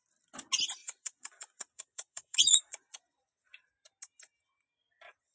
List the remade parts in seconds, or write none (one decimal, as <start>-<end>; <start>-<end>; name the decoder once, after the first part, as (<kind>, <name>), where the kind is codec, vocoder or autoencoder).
0.8-3.7 (vocoder, Vocos)